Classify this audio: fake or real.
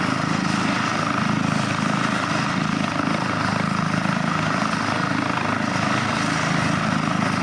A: real